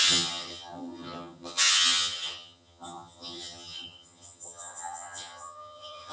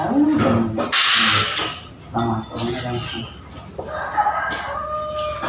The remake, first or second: first